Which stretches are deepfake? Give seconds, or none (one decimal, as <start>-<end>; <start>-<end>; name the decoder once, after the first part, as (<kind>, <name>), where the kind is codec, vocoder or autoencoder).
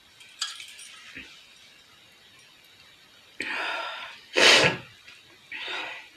none